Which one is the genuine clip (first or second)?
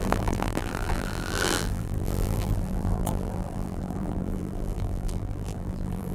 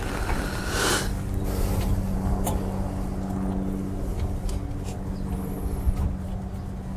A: second